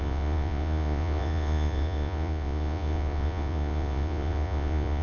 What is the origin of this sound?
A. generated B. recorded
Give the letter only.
A